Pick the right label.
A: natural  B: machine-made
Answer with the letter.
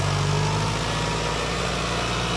A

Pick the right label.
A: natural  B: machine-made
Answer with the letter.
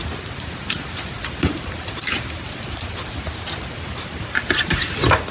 A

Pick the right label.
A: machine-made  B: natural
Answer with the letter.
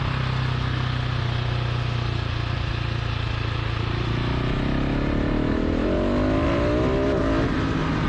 B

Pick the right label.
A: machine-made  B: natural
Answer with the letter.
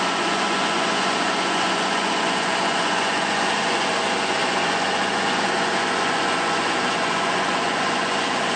A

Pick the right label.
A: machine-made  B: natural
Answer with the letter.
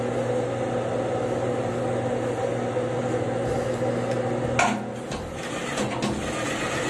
B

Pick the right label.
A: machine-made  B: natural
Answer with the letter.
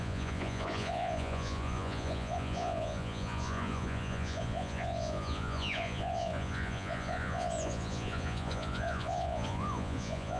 A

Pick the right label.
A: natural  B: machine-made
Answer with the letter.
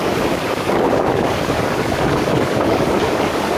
B